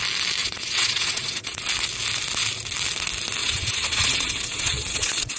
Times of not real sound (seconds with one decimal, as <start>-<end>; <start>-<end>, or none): 0.4-1.6; 3.4-5.4